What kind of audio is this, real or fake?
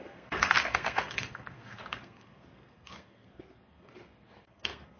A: fake